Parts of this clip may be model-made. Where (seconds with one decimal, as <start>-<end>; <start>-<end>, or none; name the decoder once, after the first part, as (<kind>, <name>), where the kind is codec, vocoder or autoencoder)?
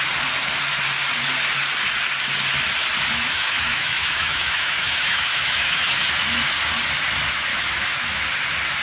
3.1-6.1 (autoencoder, DAC-VAE); 7.5-8.2